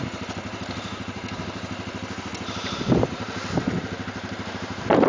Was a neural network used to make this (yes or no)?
yes